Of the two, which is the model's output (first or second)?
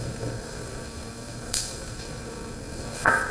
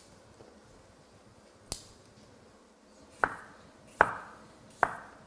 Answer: first